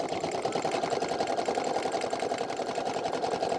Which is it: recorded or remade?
remade